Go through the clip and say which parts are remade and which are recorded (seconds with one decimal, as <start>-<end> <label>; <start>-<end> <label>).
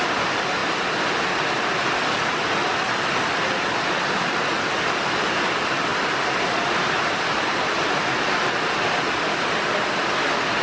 0.0-10.6 recorded